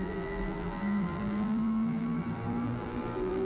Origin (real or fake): fake